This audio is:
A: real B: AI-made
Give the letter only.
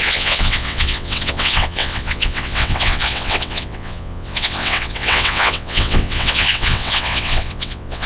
B